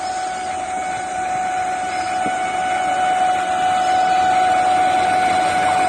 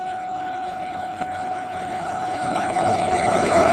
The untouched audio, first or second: first